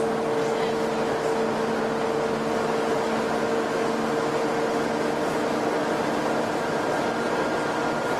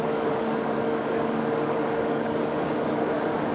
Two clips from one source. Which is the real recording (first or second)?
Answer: first